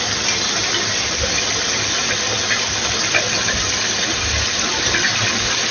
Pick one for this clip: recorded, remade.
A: recorded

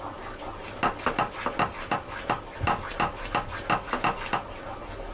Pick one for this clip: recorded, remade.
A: recorded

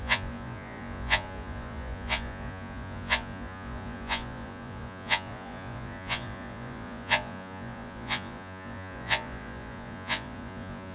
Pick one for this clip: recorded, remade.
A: remade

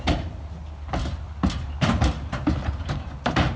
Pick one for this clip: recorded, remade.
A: recorded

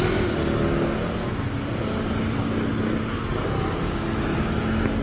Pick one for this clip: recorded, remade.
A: recorded